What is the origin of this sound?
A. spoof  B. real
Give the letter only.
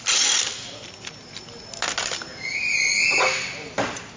B